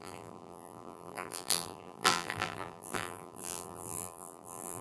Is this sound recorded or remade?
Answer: remade